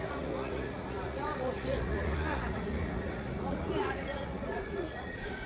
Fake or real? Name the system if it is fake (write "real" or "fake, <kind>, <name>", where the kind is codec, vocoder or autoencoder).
fake, vocoder, Vocos